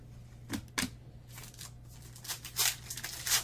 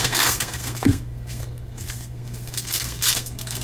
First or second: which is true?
first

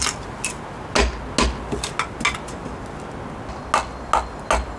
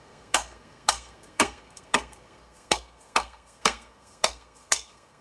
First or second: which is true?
first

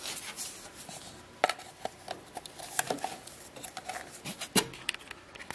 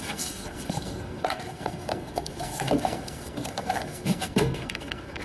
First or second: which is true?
first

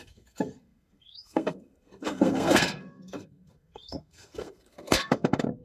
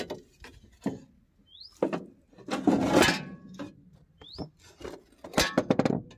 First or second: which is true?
second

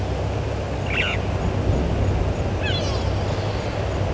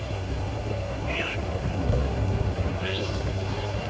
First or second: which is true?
first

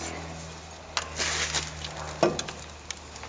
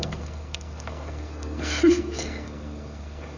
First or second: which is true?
first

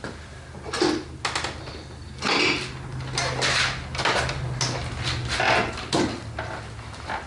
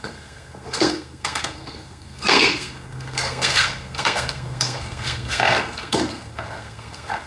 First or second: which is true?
first